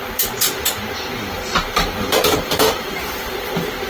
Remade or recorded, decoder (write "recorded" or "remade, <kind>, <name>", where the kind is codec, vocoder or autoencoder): remade, vocoder, BigVGAN v2